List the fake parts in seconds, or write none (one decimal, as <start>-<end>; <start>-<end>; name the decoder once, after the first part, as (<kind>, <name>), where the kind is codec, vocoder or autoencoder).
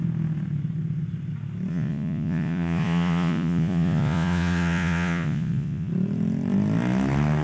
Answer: 1.7-5.9 (vocoder, Vocos)